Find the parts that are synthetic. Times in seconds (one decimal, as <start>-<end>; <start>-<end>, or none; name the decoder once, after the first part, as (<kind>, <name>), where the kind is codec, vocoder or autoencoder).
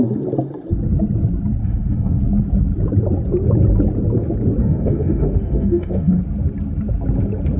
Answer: 1.6-2.2 (autoencoder, DAC-VAE); 4.6-6.2